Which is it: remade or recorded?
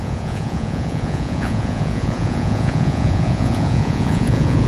remade